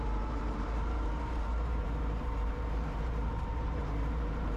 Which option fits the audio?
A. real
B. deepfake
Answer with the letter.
B